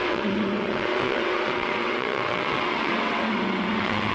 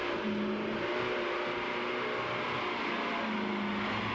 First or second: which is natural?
second